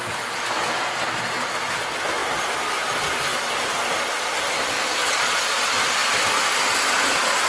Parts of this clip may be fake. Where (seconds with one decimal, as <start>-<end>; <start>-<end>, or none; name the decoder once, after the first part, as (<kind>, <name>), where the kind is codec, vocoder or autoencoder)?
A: 5.0-5.6 (vocoder, Vocos)